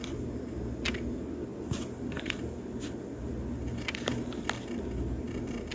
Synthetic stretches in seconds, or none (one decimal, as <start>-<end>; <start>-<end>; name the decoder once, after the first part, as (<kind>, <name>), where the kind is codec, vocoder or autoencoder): none